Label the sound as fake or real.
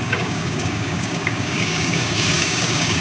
fake